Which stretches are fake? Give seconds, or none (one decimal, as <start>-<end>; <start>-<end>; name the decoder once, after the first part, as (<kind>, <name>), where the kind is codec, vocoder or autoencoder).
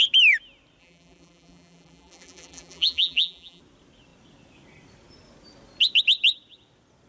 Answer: 0.8-3.6 (vocoder, BigVGAN v2)